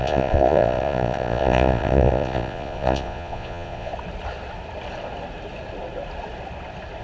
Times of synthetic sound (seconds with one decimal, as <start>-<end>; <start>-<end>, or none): 0.0-3.9